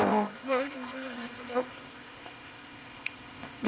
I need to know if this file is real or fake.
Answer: fake